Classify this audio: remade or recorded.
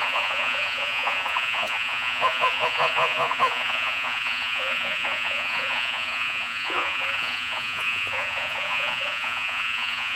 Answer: remade